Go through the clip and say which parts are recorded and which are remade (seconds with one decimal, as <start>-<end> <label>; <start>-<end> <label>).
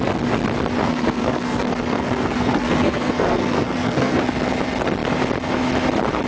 0.0-0.8 recorded; 0.8-4.2 remade; 4.2-6.3 recorded